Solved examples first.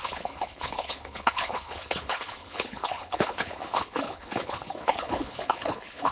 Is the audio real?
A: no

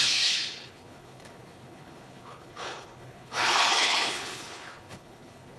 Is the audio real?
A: no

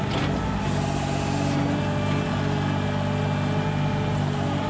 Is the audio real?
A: yes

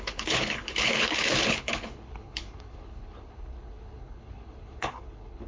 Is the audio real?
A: no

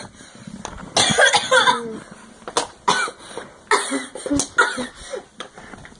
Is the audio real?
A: yes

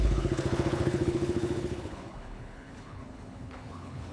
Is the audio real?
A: no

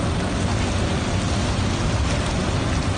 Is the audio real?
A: yes